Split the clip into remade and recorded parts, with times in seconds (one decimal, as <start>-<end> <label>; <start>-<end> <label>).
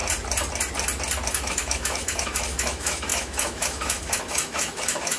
0.0-1.3 recorded; 1.3-5.2 remade